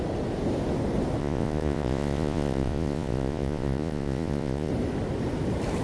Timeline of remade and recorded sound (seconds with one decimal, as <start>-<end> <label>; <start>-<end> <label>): 0.0-1.2 recorded; 1.2-4.7 remade; 4.7-5.8 recorded